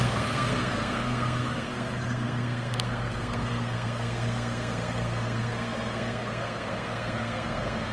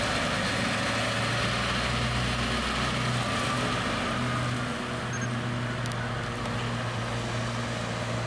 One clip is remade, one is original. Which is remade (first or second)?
first